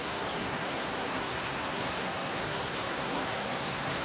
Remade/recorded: remade